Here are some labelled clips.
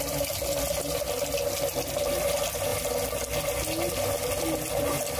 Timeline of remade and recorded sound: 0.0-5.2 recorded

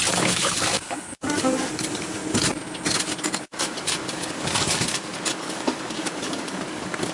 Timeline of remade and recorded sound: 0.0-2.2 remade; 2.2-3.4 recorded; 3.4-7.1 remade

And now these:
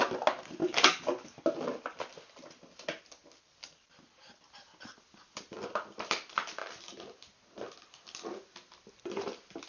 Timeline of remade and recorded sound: 0.0-0.6 recorded; 0.6-1.4 remade; 1.4-9.7 recorded

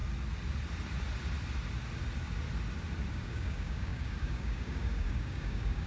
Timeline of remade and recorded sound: 0.0-3.1 recorded; 3.1-5.9 remade

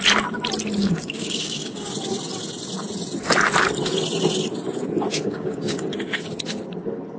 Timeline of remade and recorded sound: 0.0-0.8 recorded; 0.8-1.9 remade; 1.9-5.1 recorded; 5.1-5.9 remade; 5.9-7.2 recorded

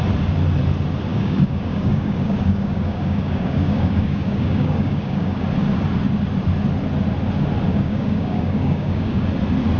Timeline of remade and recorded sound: 0.0-1.1 recorded; 1.1-5.4 remade; 5.4-7.7 recorded; 7.7-9.3 remade; 9.3-9.8 recorded